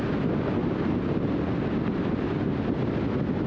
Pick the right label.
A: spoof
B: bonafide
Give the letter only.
B